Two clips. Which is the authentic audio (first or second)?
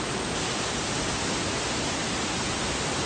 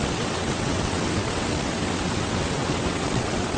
first